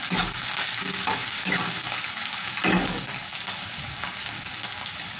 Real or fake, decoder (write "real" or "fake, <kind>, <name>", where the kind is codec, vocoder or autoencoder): fake, codec, DAC